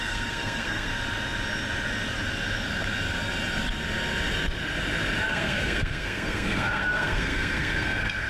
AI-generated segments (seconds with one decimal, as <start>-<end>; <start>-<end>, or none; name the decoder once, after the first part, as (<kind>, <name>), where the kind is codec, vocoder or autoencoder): 0.0-0.9 (codec, SNAC); 5.3-8.3